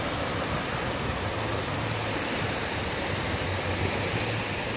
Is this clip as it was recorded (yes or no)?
yes